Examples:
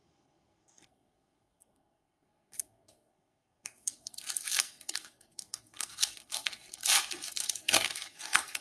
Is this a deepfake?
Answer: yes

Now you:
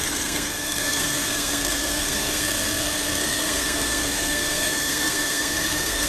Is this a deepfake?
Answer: yes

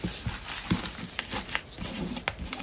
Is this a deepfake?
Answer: no